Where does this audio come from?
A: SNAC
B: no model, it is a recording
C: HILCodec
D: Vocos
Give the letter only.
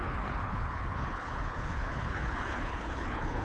C